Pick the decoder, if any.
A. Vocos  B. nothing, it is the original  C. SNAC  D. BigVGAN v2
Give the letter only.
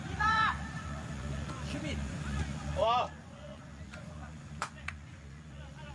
A